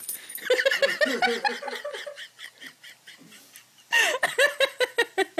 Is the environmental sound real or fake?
real